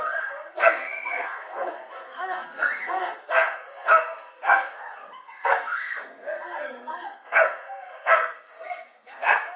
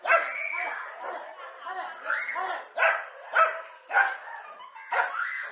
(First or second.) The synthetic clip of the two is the first